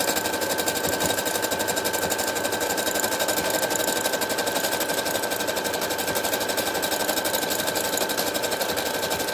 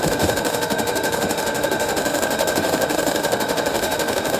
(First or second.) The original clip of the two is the first